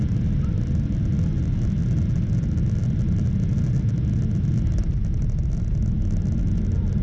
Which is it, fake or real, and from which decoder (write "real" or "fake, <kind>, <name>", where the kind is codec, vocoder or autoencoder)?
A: real